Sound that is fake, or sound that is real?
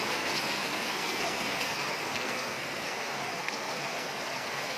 fake